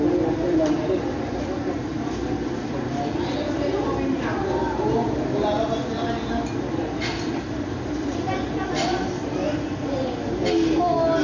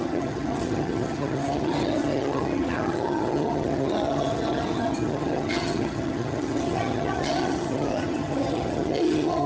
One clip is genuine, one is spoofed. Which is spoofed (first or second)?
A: second